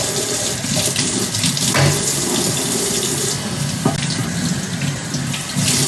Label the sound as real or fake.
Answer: real